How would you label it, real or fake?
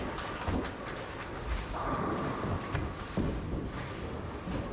real